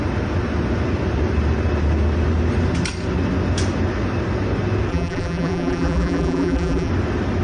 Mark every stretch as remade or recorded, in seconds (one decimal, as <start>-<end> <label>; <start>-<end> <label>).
0.0-4.9 recorded; 4.9-6.9 remade; 6.9-7.4 recorded

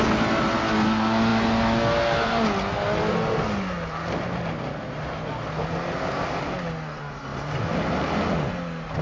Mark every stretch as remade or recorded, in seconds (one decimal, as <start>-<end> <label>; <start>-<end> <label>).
0.0-9.0 recorded

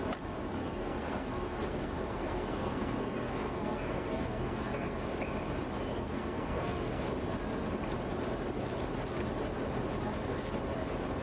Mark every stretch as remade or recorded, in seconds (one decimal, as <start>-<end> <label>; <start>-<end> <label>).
0.0-0.6 recorded; 0.6-5.0 remade; 5.0-5.9 recorded; 5.9-7.0 remade; 7.0-11.2 recorded

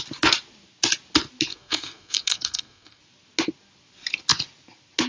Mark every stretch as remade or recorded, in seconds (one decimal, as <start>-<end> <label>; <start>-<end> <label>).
0.0-1.5 recorded; 1.5-3.0 remade; 3.0-5.1 recorded

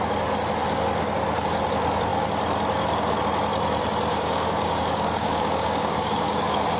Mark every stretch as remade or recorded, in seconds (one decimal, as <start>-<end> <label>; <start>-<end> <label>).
0.0-4.1 recorded; 4.1-6.8 remade

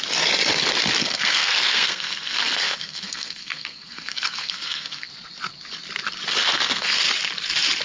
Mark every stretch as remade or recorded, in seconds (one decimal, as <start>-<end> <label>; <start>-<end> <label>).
0.0-1.0 recorded; 1.0-5.1 remade; 5.1-6.4 recorded; 6.4-7.0 remade; 7.0-7.8 recorded

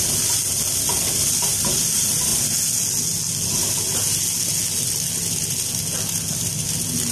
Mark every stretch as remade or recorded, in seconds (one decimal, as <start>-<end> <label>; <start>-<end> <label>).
0.0-7.1 recorded

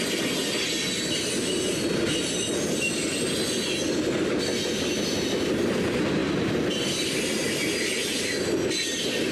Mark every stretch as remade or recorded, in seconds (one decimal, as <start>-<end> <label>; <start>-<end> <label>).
0.0-9.3 recorded